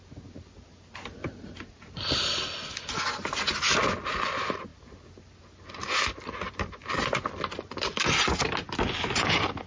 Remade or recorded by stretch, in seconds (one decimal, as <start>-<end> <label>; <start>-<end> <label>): 0.0-9.7 recorded